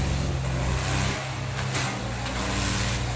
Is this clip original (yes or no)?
yes